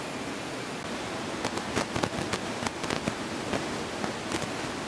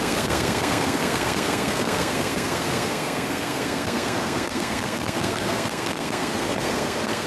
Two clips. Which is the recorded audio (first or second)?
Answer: first